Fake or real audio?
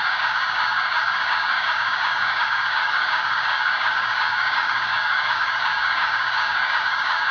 fake